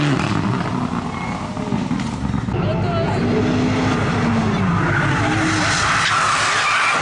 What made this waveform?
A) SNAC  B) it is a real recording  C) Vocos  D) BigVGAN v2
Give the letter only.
B